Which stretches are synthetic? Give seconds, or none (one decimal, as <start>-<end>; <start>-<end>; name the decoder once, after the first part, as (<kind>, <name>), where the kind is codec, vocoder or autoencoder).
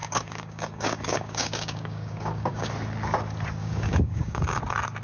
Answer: 0.0-2.7 (codec, DAC); 3.6-4.6